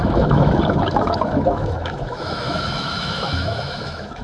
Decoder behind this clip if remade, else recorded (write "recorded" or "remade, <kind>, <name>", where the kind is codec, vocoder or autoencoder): remade, autoencoder, DAC-VAE